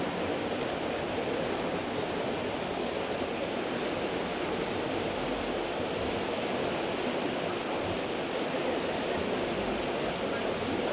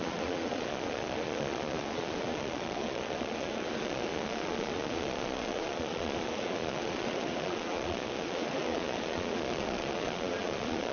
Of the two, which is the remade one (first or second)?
second